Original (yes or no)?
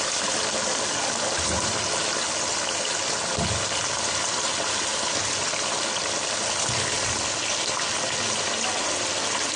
yes